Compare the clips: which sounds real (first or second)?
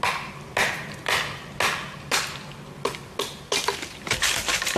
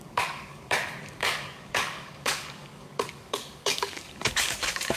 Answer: first